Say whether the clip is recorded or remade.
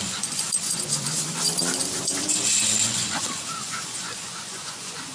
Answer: remade